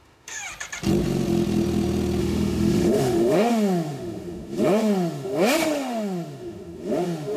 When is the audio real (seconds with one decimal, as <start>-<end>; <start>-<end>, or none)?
0.4-2.2